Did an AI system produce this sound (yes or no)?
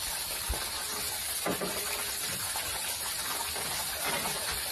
no